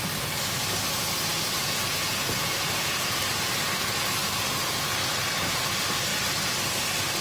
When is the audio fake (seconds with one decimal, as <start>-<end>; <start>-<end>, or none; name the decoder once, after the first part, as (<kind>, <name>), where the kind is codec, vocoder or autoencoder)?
1.6-3.3 (vocoder, Vocos)